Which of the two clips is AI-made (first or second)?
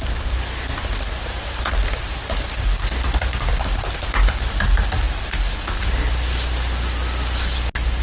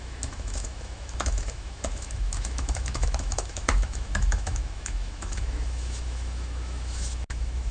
second